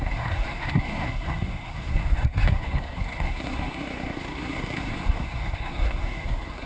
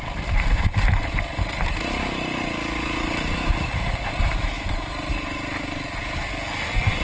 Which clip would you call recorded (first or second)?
second